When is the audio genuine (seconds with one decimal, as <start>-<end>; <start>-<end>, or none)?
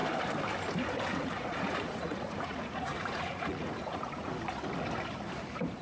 0.0-1.1; 4.3-5.8